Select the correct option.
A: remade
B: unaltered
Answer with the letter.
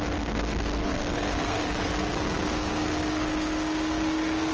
A